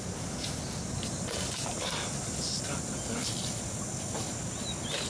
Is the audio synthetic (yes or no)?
no